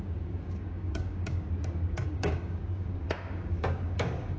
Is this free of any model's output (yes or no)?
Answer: no